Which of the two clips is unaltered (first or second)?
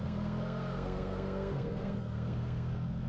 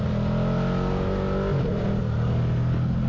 second